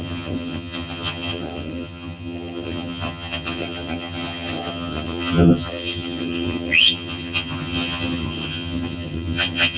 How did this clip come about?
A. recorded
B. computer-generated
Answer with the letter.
B